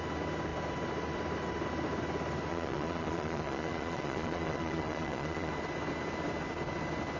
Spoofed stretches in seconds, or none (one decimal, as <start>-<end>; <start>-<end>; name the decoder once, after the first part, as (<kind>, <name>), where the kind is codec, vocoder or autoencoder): 2.5-5.5 (vocoder, Vocos)